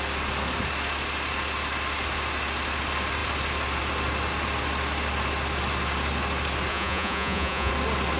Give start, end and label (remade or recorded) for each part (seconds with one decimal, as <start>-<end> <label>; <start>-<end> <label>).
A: 0.0-6.7 recorded; 6.7-7.7 remade; 7.7-8.2 recorded